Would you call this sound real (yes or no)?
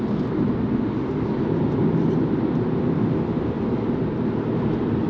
yes